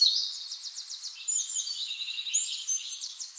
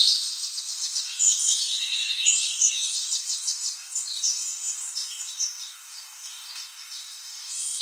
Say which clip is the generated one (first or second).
second